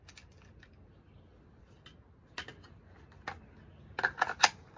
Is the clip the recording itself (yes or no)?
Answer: yes